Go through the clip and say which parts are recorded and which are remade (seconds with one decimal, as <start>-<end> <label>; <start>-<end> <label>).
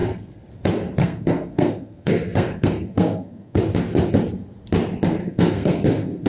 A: 0.0-0.5 remade; 0.5-1.0 recorded; 1.0-3.6 remade; 3.6-5.2 recorded; 5.2-6.3 remade